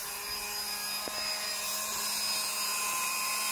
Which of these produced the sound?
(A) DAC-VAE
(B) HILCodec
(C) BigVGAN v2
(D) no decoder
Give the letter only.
C